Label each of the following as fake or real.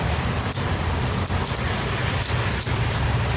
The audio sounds real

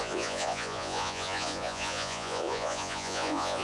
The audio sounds fake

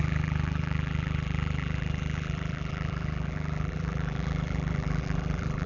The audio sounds fake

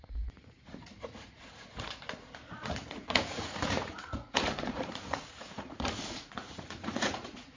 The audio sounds fake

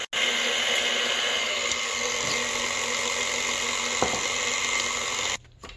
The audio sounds real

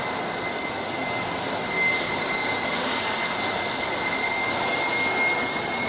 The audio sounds real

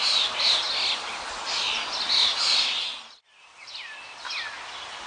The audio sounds real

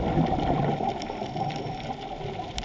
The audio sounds fake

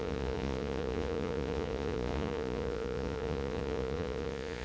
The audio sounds fake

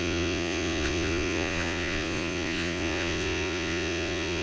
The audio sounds fake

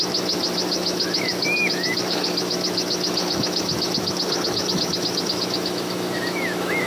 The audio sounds fake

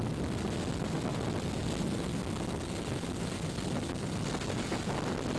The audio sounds real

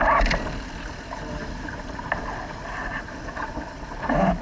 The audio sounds real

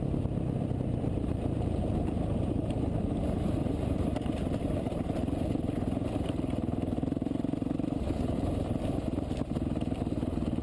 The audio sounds real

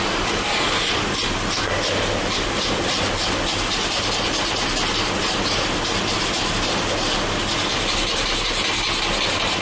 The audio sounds real